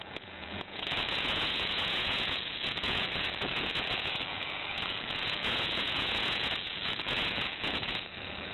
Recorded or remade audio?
remade